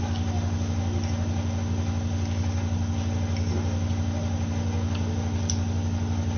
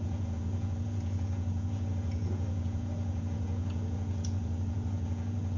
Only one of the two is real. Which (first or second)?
first